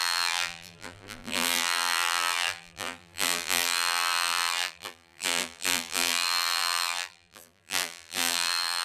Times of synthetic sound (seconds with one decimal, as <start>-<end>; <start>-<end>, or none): 0.0-8.8